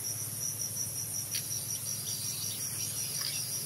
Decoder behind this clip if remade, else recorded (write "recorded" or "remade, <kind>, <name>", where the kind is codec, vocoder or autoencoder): recorded